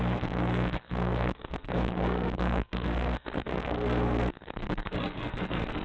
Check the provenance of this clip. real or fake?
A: fake